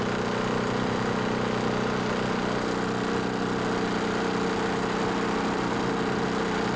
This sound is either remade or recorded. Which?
recorded